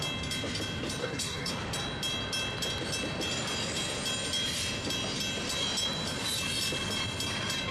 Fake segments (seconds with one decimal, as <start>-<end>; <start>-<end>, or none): 1.0-1.5